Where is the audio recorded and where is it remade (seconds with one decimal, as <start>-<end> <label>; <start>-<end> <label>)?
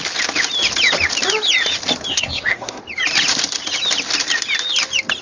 0.0-2.1 recorded; 2.1-2.8 remade; 2.8-5.2 recorded